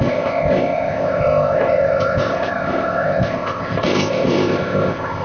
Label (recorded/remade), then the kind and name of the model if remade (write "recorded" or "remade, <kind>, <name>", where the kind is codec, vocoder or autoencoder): remade, codec, ZipCodec